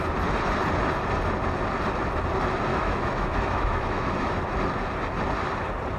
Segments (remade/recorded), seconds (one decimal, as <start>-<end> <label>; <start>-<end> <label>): 0.0-2.7 recorded; 2.7-4.3 remade; 4.3-6.0 recorded